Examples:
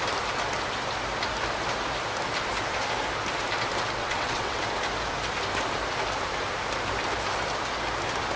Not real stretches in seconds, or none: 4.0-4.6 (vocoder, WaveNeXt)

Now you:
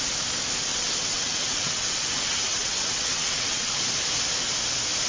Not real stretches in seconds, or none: 0.7-3.8 (vocoder, WaveNeXt)

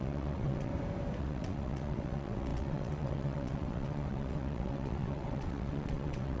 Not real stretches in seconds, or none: 0.0-0.7 (vocoder, WaveNeXt); 1.2-6.4